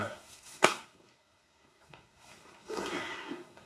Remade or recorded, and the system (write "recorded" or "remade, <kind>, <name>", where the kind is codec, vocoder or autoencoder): remade, codec, SNAC